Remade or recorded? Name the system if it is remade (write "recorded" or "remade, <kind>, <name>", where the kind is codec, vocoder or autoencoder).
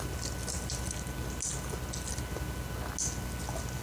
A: recorded